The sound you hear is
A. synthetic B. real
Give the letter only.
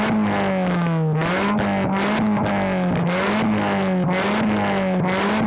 B